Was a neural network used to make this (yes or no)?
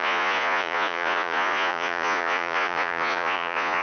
yes